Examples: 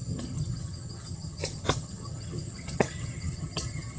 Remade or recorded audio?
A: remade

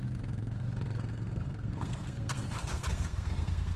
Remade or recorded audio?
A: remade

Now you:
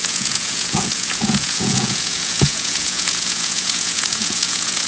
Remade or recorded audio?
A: remade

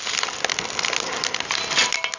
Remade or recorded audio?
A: recorded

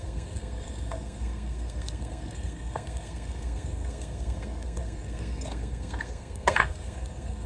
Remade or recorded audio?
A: remade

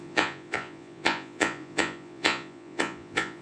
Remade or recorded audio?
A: remade